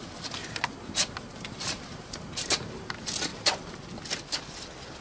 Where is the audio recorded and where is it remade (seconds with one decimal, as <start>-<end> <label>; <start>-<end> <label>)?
0.0-0.4 recorded; 0.4-2.9 remade; 2.9-5.0 recorded